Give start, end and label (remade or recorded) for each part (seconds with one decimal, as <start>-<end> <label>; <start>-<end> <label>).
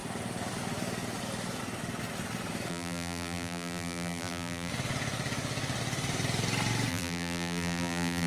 0.0-2.7 recorded; 2.7-4.7 remade; 4.7-6.9 recorded; 6.9-8.3 remade